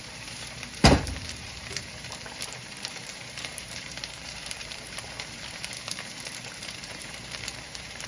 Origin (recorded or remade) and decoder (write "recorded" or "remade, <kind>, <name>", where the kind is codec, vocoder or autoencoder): remade, vocoder, BigVGAN v2